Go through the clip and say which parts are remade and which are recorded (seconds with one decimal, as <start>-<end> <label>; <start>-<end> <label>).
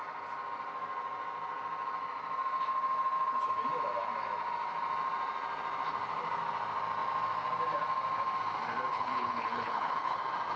0.0-8.9 recorded; 8.9-10.2 remade; 10.2-10.6 recorded